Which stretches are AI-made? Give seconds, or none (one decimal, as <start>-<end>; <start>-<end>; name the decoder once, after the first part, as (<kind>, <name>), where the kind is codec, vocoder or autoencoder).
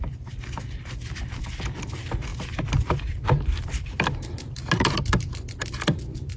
none